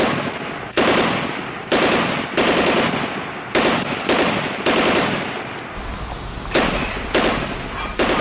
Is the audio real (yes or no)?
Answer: yes